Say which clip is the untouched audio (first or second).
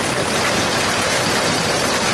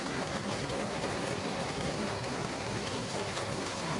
first